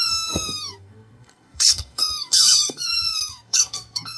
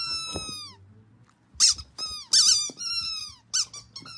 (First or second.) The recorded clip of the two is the second